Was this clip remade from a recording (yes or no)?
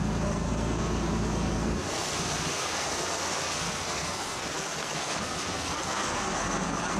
yes